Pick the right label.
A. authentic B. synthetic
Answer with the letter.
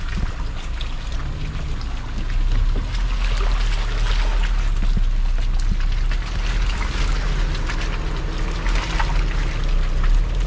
A